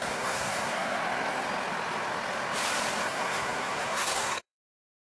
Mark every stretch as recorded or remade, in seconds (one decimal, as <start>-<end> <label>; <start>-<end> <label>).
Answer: 0.0-1.0 remade; 1.0-3.0 recorded; 3.0-5.2 remade